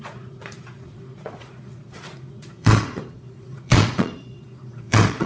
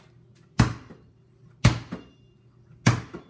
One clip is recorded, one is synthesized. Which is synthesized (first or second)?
first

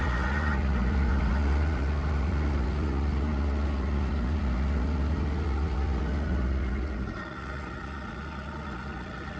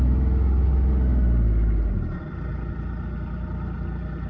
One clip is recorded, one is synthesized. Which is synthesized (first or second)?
first